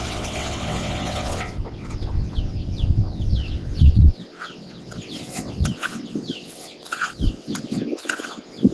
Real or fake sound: fake